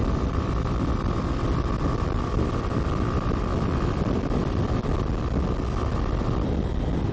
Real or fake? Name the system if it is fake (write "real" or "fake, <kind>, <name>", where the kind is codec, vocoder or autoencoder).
real